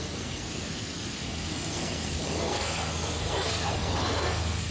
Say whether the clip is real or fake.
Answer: fake